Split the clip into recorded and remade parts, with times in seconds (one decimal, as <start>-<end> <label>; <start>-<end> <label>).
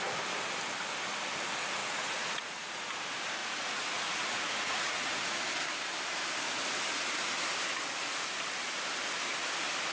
0.0-1.8 recorded; 1.8-2.7 remade; 2.7-3.4 recorded; 3.4-5.5 remade; 5.5-9.9 recorded